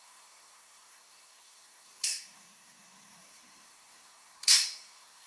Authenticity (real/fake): fake